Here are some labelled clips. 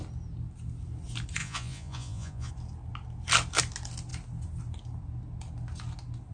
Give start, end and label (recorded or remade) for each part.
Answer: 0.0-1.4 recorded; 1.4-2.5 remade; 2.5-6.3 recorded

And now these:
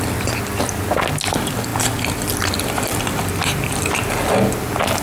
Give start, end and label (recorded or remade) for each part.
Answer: 0.0-5.0 recorded

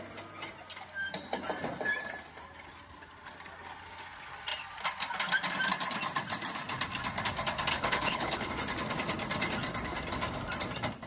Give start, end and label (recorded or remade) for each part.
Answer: 0.0-7.7 recorded; 7.7-8.5 remade; 8.5-11.1 recorded